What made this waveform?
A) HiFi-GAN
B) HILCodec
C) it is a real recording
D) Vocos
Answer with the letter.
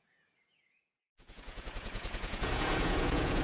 D